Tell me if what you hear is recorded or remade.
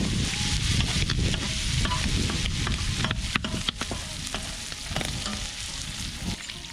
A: recorded